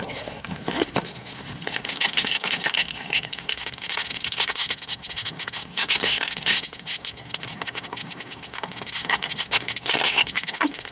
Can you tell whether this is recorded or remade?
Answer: remade